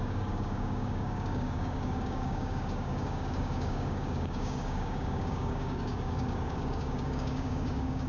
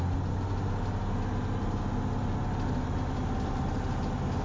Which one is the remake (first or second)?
first